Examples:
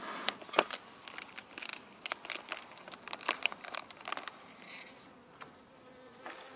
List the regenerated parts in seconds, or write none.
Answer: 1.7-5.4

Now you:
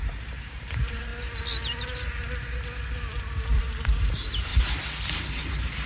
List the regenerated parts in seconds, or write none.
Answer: 0.0-1.1; 3.6-4.5; 5.1-5.9

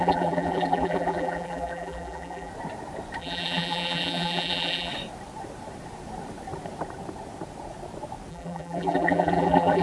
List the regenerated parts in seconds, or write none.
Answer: 0.0-2.5; 3.2-4.9; 8.3-9.8

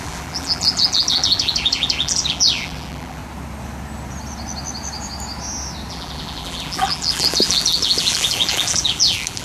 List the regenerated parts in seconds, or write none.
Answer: 0.0-3.2; 5.9-9.4

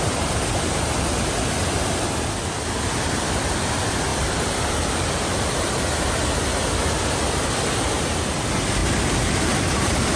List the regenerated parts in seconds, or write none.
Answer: 4.1-5.7; 8.8-10.2

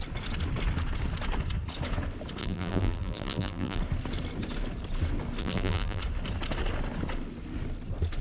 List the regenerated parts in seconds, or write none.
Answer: 2.4-3.8; 5.4-6.0

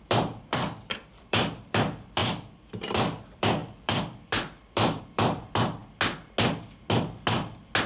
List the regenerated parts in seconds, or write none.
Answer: 0.0-5.8

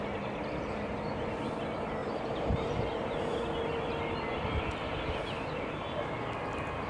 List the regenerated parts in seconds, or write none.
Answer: 2.0-4.0